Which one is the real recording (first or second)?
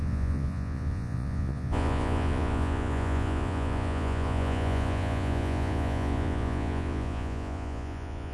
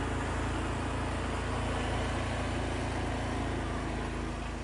second